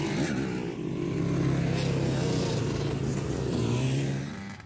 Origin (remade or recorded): recorded